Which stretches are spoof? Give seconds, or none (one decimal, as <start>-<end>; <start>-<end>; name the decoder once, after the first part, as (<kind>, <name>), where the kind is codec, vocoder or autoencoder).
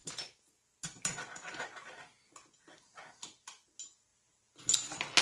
none